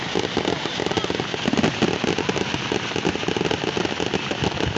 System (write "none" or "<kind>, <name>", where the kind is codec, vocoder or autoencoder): none